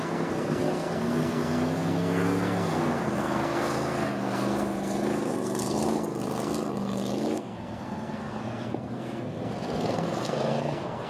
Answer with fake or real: fake